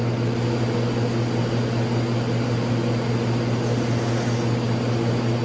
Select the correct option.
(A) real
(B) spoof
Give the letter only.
A